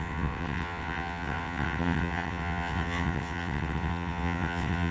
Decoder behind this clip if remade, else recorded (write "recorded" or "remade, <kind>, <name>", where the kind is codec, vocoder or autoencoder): remade, vocoder, WaveNeXt